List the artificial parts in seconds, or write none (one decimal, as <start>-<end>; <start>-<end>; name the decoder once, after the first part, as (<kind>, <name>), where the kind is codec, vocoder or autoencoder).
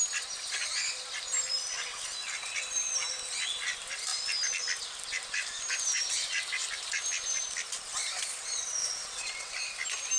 8.8-9.5 (vocoder, WaveNeXt)